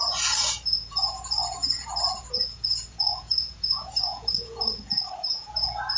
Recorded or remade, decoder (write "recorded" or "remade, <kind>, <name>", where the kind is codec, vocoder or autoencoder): remade, vocoder, Vocos